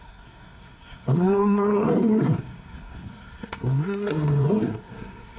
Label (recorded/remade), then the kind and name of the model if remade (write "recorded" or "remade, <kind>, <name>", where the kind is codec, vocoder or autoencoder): remade, codec, SNAC